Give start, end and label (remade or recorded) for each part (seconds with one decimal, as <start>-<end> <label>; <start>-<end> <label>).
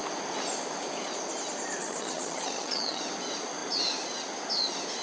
0.0-1.8 recorded; 1.8-3.0 remade; 3.0-5.0 recorded